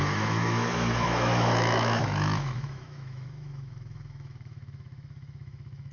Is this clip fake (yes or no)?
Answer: yes